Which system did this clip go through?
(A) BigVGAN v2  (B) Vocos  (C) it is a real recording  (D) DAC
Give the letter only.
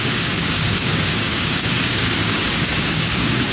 D